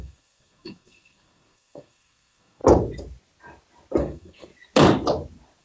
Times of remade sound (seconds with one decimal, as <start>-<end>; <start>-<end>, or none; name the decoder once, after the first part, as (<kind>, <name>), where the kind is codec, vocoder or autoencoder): 0.0-2.6 (codec, SNAC); 4.0-4.5